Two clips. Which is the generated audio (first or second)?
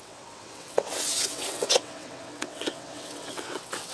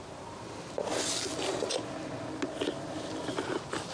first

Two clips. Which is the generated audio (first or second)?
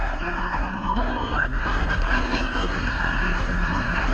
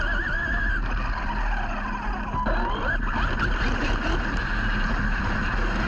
first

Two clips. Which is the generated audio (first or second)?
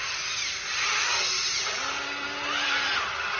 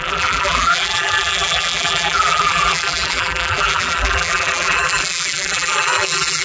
second